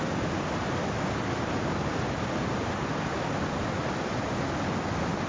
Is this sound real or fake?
real